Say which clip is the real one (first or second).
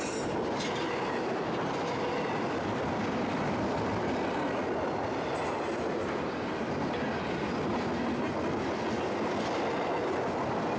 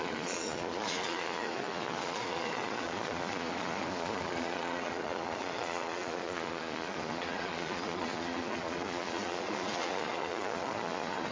first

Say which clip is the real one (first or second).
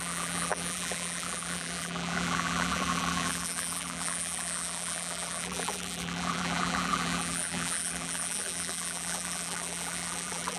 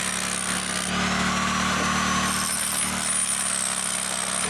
second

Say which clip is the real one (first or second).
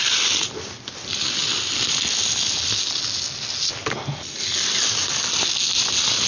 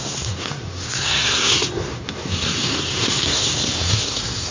first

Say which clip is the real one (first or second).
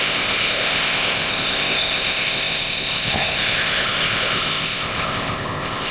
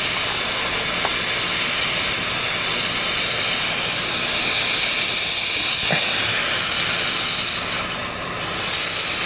second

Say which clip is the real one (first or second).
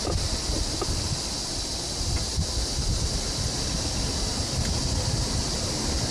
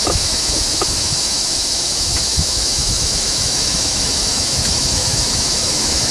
first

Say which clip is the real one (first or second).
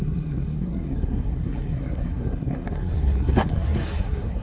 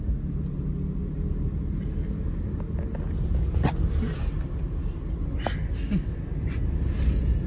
second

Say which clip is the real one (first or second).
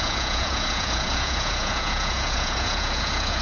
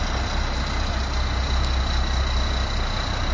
second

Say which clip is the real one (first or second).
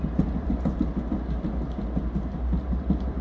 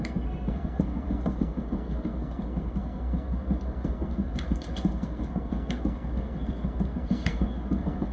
first